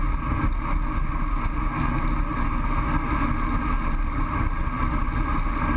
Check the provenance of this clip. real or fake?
real